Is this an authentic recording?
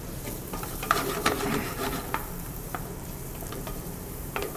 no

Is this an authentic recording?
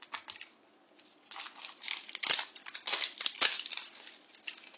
yes